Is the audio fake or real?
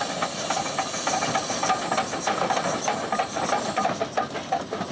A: real